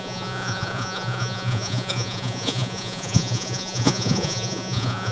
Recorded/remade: remade